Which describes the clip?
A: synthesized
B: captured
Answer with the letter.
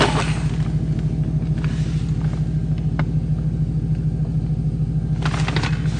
B